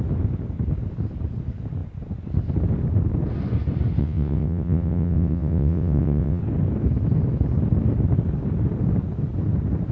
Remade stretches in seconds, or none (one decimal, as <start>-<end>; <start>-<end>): 4.0-6.4